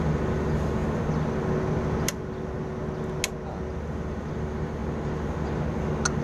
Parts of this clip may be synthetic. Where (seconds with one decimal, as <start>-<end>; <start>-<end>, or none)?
none